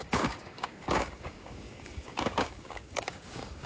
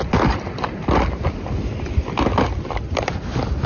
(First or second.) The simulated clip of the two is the first